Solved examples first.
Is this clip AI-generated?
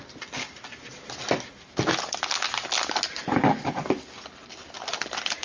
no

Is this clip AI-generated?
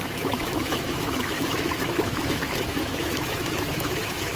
yes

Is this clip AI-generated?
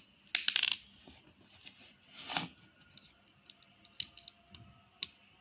no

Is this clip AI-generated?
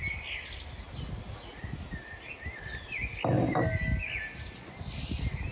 no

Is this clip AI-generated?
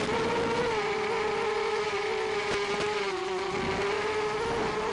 no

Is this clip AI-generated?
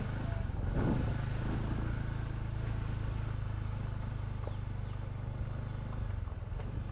no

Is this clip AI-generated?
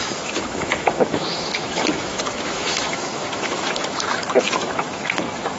yes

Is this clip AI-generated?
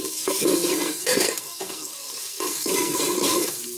yes